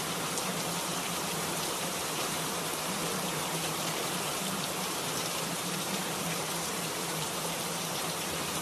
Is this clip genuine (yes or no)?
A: no